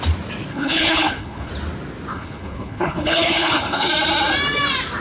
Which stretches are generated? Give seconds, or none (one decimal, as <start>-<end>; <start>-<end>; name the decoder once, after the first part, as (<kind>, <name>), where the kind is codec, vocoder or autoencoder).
0.5-1.5 (codec, HILCodec); 2.1-3.9